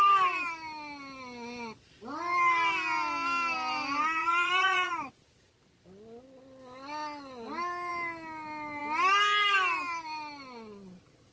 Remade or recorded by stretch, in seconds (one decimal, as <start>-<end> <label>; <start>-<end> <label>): 0.0-4.2 recorded; 4.2-4.9 remade; 4.9-11.3 recorded